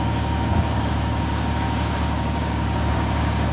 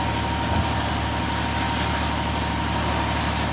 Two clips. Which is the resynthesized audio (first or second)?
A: first